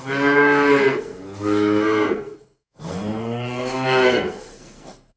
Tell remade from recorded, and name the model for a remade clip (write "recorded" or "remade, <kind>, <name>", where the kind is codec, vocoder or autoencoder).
remade, codec, SNAC